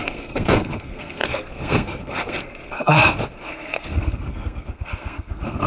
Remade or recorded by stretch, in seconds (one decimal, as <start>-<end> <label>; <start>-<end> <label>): 0.0-5.7 remade